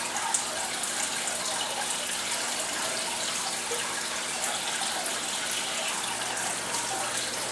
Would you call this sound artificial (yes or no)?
no